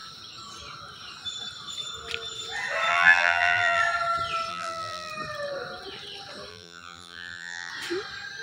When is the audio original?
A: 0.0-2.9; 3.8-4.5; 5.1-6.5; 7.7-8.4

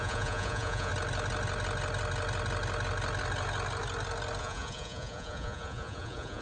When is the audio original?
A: 0.9-4.4

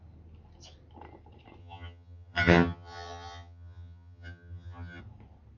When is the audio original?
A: 0.0-1.6; 5.0-5.6

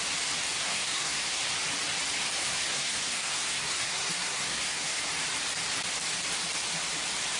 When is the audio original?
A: 0.0-0.6; 1.5-2.4; 5.0-7.4

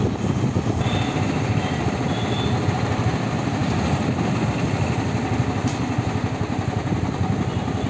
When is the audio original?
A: 0.0-7.9